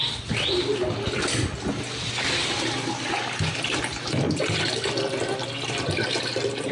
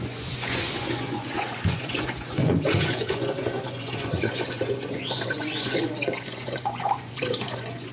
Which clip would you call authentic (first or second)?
first